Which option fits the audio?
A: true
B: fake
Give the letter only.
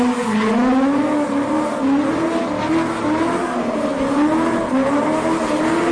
A